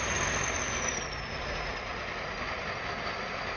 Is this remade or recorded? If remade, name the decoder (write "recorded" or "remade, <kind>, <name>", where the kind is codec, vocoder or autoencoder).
recorded